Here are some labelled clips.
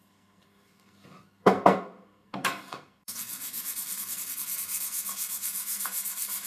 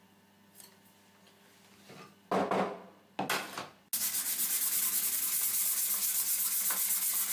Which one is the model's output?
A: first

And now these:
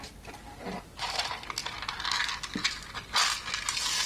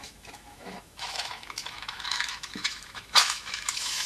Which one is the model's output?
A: second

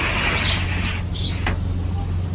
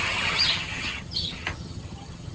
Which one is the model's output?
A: second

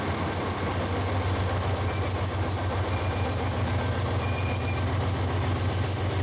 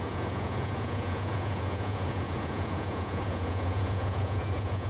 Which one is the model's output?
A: second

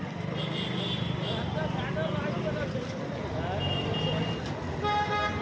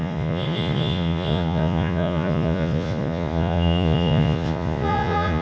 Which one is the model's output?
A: second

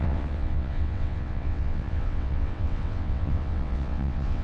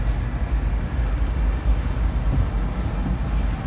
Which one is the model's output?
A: first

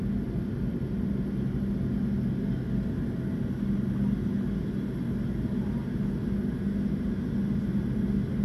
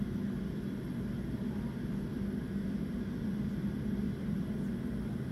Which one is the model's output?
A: second